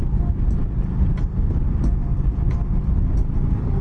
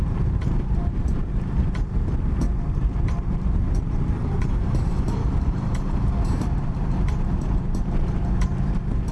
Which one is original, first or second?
first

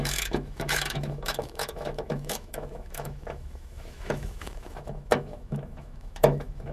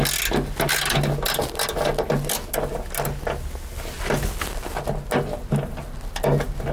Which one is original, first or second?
second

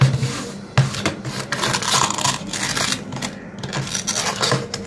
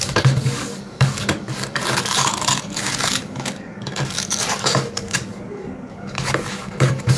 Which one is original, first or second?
first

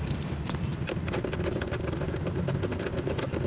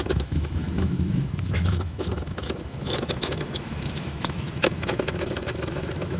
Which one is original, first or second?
first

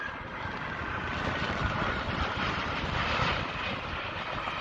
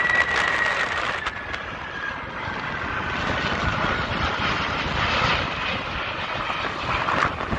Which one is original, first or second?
second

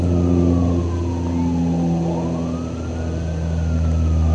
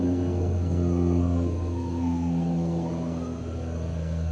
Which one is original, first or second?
first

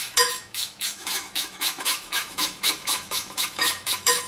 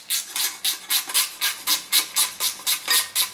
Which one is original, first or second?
second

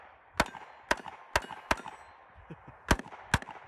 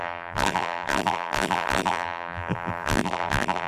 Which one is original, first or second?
first